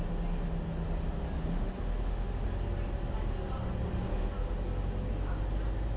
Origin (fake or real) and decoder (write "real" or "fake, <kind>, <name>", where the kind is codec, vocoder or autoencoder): real